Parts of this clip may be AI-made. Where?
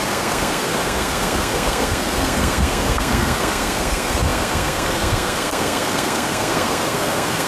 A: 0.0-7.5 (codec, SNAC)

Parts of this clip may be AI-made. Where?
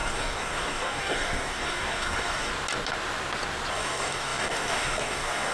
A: 0.0-2.5 (codec, DAC); 3.7-5.5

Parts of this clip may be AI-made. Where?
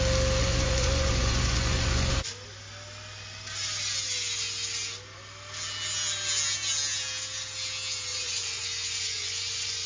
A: 0.4-2.3 (vocoder, Vocos); 8.1-9.9